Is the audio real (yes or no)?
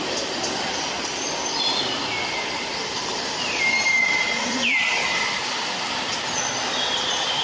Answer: yes